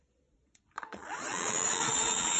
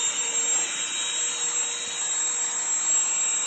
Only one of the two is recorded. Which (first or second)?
second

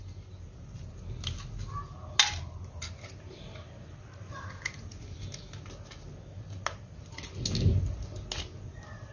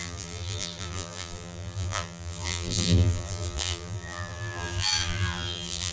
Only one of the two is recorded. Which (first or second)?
first